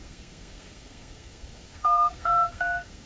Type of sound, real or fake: fake